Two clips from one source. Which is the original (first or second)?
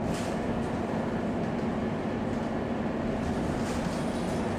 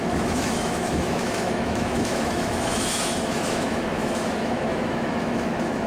first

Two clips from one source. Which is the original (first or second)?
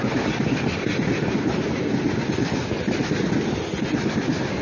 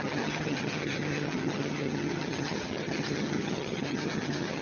first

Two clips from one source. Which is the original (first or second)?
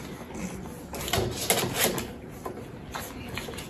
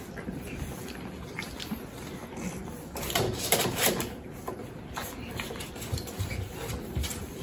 first